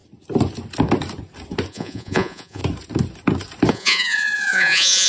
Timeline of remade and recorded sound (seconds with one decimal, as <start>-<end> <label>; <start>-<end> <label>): 0.0-1.7 recorded; 1.7-2.6 remade; 2.6-3.7 recorded; 3.7-5.1 remade